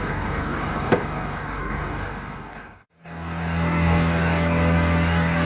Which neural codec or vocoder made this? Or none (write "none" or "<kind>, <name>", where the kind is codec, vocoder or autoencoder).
codec, DAC